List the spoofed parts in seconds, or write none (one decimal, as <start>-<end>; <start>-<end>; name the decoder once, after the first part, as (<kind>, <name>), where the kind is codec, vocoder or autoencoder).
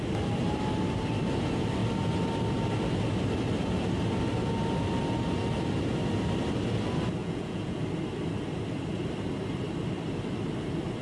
7.2-7.8 (vocoder, Vocos)